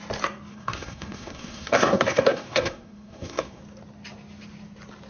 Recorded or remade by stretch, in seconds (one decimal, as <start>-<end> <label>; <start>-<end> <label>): 0.0-0.5 recorded; 0.5-3.6 remade; 3.6-5.1 recorded